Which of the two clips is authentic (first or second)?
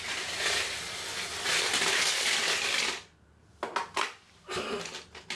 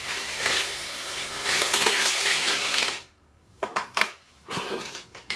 first